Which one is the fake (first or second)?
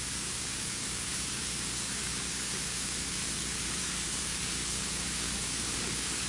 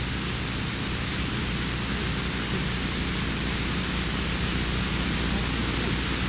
first